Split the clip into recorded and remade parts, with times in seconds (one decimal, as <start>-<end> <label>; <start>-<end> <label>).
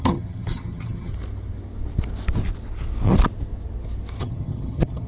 0.0-1.1 remade; 1.1-4.2 recorded; 4.2-5.1 remade